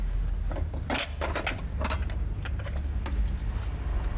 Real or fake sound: real